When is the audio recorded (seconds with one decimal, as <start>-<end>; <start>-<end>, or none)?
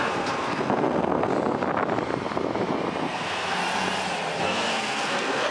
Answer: 1.3-3.0; 3.6-4.4